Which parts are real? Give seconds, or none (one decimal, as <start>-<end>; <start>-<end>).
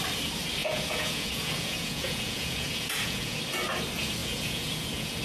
0.0-0.6; 3.4-4.2